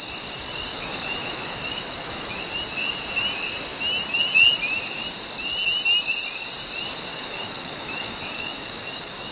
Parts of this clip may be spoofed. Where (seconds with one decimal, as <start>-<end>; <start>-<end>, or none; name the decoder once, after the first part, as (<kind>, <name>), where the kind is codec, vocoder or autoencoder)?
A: 0.7-2.4 (autoencoder, DAC-VAE); 7.1-9.3